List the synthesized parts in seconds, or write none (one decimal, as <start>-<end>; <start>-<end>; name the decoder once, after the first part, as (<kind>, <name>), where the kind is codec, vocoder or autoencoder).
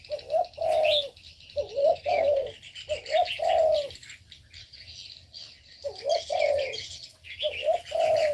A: 1.8-2.5 (codec, SNAC)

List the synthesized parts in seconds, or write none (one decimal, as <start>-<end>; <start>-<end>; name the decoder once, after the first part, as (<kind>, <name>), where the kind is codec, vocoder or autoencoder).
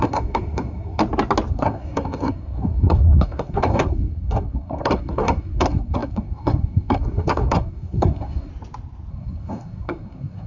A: 0.0-1.0 (codec, SNAC); 1.5-8.5; 9.1-10.5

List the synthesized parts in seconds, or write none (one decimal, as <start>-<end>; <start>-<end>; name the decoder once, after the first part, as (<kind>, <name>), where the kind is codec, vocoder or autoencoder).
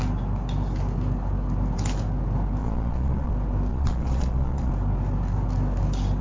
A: 2.6-3.3 (vocoder, Vocos); 3.7-4.7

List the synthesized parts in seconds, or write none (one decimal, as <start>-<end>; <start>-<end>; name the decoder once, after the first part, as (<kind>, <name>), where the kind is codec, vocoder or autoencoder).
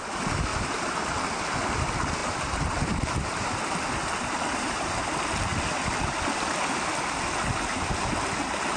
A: 0.5-1.1 (vocoder, BigVGAN v2); 2.2-5.0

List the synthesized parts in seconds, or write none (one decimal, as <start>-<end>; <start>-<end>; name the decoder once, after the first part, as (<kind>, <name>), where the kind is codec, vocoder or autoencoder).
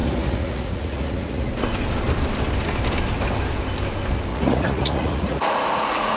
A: 0.0-1.5 (vocoder, Vocos); 4.3-6.2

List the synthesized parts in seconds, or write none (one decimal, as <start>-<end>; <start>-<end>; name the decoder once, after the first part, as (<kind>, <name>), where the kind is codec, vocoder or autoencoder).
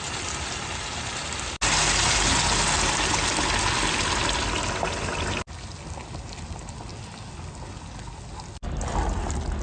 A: none